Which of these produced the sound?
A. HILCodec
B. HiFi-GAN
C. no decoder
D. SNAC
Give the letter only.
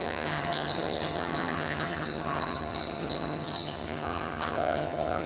B